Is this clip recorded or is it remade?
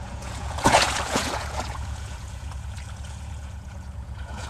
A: remade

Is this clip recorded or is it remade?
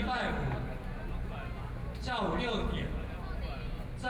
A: recorded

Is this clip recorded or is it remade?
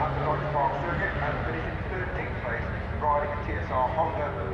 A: recorded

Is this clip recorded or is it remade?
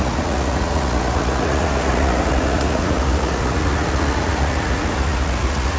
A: remade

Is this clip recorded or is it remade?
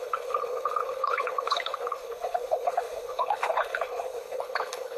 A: remade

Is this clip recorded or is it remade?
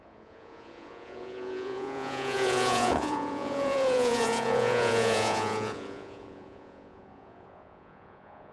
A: remade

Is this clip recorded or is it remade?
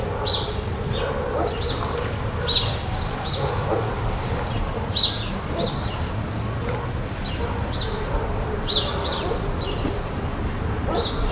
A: recorded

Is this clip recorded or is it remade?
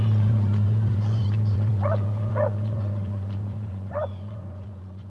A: remade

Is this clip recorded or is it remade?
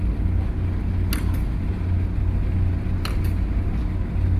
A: recorded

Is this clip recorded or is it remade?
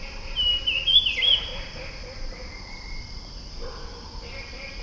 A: recorded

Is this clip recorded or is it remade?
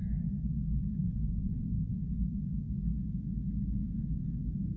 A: remade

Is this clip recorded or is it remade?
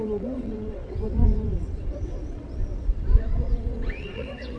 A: remade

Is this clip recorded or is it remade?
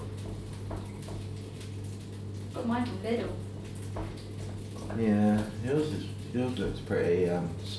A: recorded